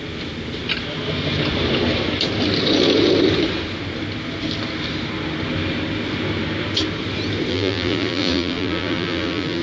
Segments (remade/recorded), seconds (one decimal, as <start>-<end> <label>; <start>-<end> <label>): 0.0-7.5 recorded; 7.5-9.6 remade